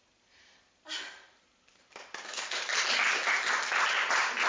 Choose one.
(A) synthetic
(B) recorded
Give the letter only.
B